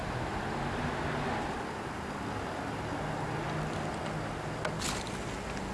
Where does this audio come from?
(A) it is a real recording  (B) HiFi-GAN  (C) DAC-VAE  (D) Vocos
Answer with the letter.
A